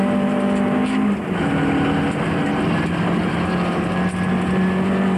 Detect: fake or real real